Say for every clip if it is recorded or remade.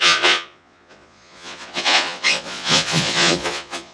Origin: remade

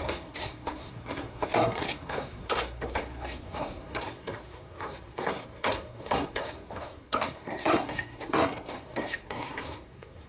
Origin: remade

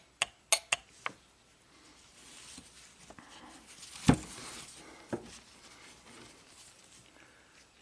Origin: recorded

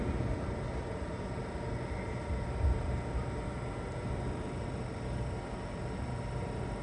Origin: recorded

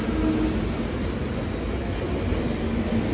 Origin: recorded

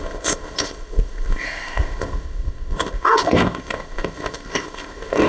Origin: remade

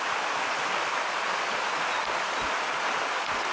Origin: recorded